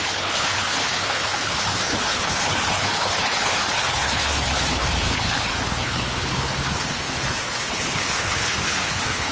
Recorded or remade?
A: remade